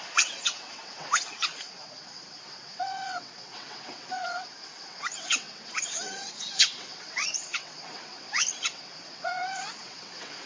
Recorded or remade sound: remade